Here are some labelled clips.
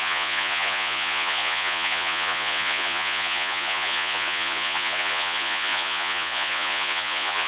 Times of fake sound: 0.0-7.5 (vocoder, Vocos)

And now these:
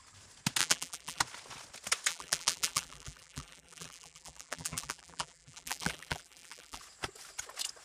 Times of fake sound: 0.6-1.2 (vocoder, BigVGAN v2); 2.1-6.8